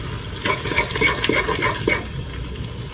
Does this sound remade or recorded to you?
recorded